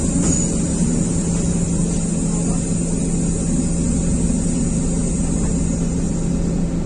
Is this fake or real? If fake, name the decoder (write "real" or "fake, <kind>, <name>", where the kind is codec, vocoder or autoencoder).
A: real